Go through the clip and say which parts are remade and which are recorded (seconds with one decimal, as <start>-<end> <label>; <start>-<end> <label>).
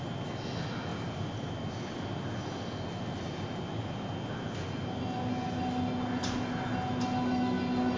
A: 0.0-8.0 recorded